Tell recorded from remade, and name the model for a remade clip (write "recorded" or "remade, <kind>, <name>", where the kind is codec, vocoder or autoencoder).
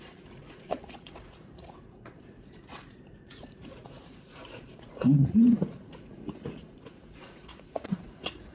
remade, vocoder, Vocos